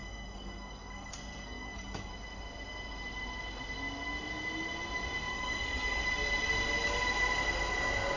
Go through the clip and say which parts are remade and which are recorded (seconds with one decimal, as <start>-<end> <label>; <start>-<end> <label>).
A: 0.0-2.1 remade; 2.1-5.3 recorded; 5.3-6.0 remade; 6.0-8.2 recorded